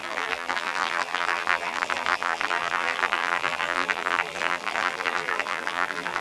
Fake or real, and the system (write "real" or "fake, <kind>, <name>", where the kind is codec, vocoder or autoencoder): fake, vocoder, BigVGAN v2